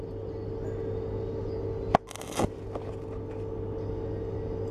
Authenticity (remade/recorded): recorded